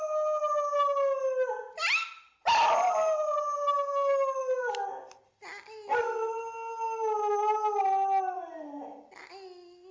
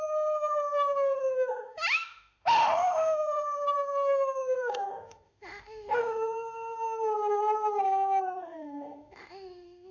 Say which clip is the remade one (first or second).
second